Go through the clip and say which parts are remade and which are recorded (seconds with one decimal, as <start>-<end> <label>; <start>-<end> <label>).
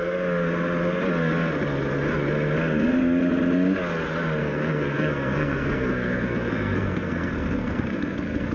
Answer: 0.0-4.4 recorded; 4.4-8.5 remade